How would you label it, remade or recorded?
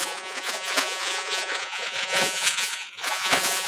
remade